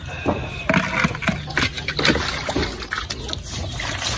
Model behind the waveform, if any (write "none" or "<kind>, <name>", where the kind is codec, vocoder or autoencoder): none